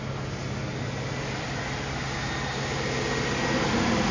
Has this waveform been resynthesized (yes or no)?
no